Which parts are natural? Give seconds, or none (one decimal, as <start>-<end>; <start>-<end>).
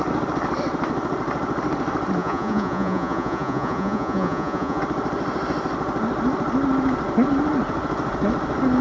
0.0-2.2; 4.8-8.8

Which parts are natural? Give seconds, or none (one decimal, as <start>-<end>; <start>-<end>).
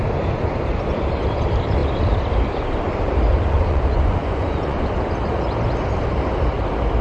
0.0-3.3; 4.9-7.0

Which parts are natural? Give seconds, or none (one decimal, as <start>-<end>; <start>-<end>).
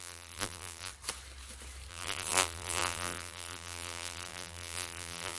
0.9-1.9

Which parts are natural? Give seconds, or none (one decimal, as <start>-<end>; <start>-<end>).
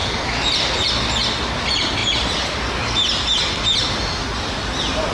0.0-5.1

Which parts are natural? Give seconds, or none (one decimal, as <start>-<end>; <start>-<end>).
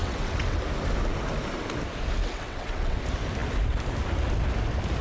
0.6-2.2; 3.0-5.0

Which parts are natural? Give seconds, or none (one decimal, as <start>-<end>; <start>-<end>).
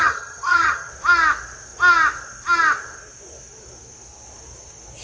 0.9-5.0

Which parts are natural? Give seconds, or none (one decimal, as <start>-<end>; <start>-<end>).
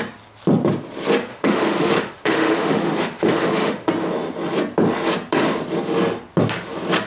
0.0-1.3; 3.9-7.1